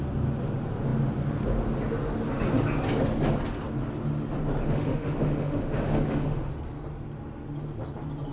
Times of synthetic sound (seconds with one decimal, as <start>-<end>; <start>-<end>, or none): 4.6-6.5